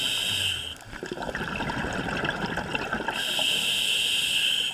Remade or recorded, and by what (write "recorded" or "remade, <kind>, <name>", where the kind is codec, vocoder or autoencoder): recorded